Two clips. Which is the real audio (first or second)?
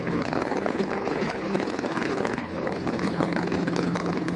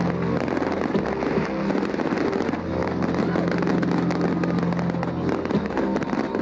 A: second